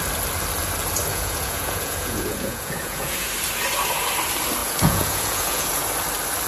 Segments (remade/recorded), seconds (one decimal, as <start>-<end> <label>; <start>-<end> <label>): 0.0-1.1 recorded; 1.1-3.3 remade; 3.3-4.6 recorded; 4.6-5.9 remade; 5.9-6.5 recorded